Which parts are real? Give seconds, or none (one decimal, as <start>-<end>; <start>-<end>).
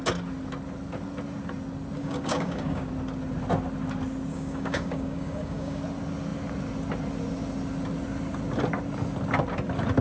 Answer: 0.0-2.0; 2.9-4.3; 5.8-10.0